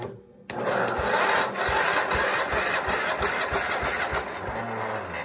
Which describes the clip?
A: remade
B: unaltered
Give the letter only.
B